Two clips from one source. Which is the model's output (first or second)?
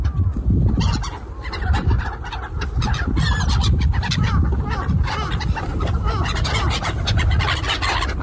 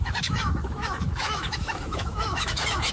second